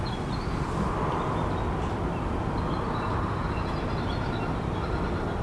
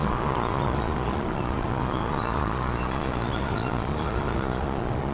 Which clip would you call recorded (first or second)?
first